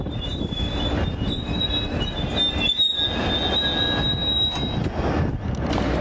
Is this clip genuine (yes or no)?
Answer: yes